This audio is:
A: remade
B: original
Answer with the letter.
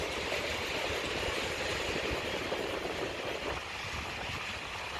B